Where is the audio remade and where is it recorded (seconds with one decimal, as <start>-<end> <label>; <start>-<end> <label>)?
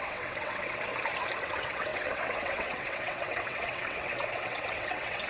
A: 0.0-0.9 remade; 0.9-1.4 recorded; 1.4-5.3 remade